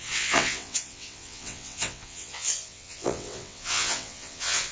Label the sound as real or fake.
fake